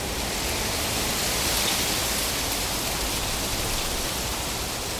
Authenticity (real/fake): real